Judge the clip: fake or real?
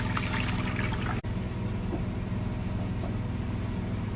real